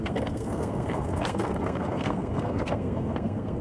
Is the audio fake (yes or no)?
yes